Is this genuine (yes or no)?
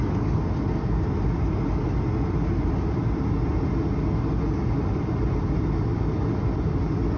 yes